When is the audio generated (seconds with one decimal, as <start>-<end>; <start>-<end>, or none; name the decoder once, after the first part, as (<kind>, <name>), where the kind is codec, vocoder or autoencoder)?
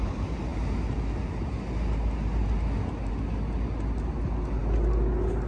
none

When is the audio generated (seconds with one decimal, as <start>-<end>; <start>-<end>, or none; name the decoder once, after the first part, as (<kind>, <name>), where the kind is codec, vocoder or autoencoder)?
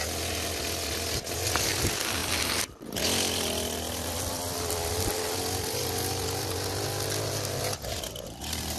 none